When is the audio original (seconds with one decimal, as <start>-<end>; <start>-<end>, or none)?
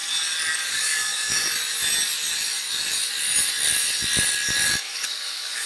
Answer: 0.0-0.6; 1.4-4.8